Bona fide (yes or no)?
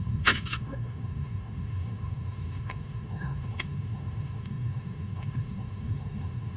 no